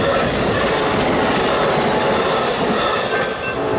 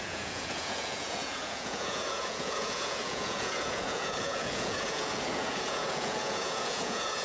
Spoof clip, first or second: second